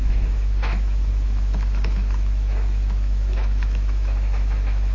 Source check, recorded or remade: remade